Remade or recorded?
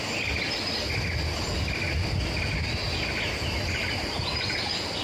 recorded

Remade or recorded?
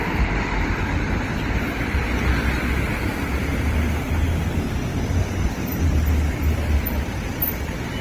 recorded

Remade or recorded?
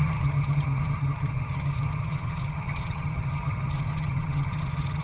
remade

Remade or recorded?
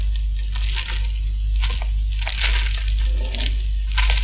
recorded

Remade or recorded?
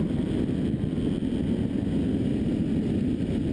recorded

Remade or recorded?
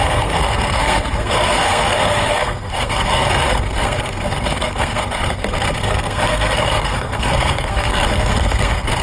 remade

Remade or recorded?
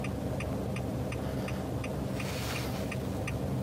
recorded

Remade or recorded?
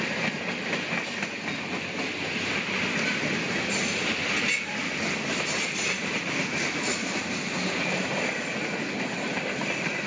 recorded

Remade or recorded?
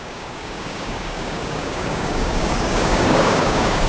remade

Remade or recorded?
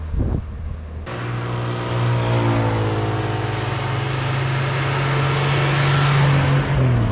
recorded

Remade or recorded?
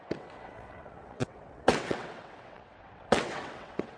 remade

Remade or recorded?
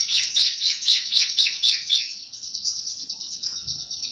remade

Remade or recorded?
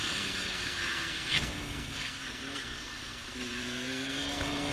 remade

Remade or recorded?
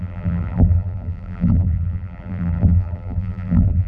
remade